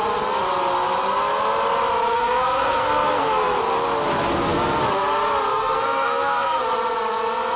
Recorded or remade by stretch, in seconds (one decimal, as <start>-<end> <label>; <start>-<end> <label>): 0.0-2.1 recorded; 2.1-3.6 remade; 3.6-5.5 recorded; 5.5-6.6 remade; 6.6-7.6 recorded